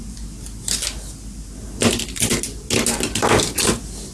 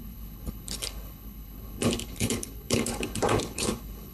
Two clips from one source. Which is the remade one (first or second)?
second